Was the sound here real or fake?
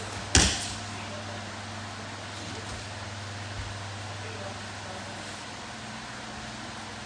real